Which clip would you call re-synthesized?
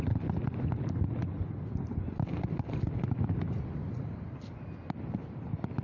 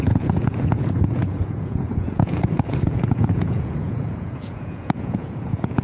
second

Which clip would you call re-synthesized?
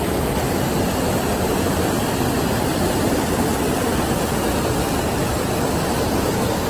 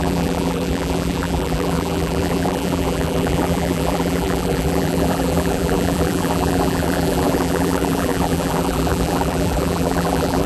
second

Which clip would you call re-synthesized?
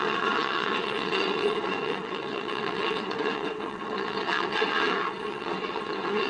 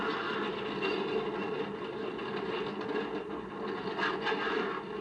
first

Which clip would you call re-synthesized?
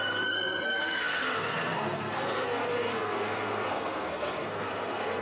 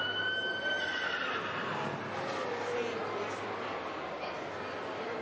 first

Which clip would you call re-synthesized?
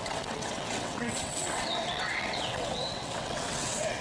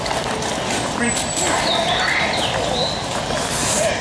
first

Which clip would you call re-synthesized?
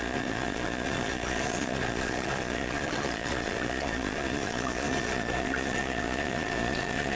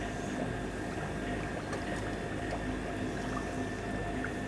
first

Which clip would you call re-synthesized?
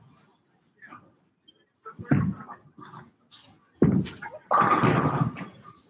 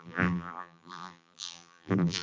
second